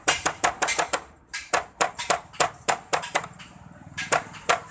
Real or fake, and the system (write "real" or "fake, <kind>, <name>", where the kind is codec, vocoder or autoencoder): fake, vocoder, BigVGAN v2